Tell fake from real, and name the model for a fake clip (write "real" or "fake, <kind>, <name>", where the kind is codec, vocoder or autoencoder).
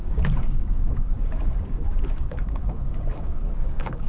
fake, codec, DAC